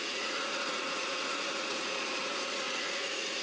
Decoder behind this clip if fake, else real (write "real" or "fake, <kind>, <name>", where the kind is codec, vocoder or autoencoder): fake, vocoder, Vocos